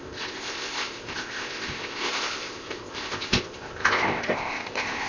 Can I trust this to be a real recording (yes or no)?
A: no